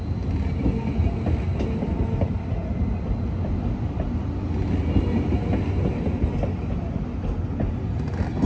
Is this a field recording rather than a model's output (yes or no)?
yes